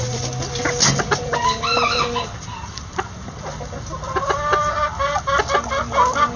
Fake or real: real